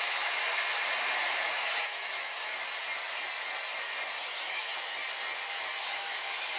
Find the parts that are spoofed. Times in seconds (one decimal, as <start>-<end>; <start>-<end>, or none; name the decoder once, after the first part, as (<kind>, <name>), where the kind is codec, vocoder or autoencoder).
0.0-0.4 (autoencoder, DAC-VAE); 1.5-2.5; 4.3-4.7; 5.8-6.6